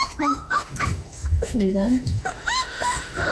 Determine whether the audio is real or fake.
fake